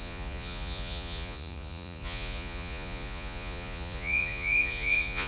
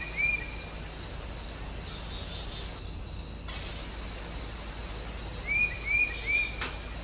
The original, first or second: second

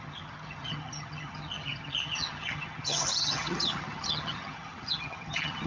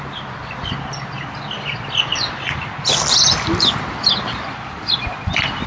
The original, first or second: second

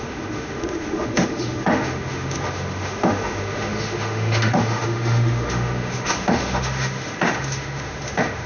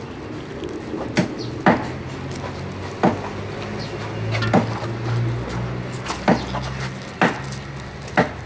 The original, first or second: second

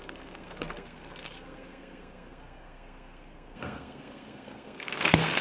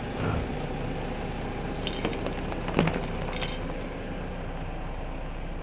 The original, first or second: second